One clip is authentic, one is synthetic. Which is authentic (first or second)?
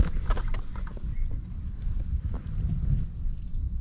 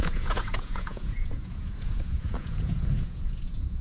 first